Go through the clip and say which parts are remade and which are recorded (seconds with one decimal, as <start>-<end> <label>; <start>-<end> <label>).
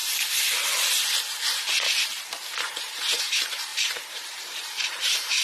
0.0-3.2 recorded; 3.2-5.4 remade